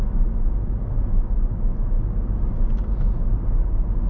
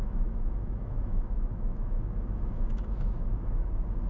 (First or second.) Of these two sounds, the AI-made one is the second